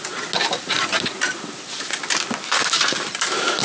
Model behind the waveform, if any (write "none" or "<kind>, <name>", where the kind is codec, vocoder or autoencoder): none